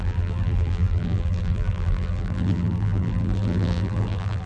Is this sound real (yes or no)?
no